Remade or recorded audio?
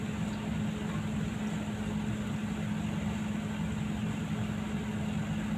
recorded